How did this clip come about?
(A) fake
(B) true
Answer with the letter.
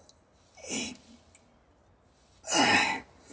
B